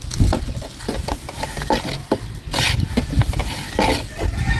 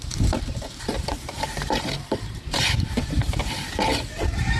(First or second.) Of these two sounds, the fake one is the second